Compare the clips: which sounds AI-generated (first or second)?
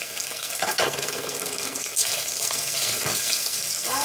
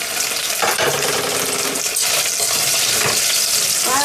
first